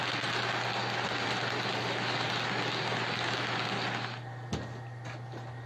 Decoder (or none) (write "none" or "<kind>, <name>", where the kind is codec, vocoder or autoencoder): none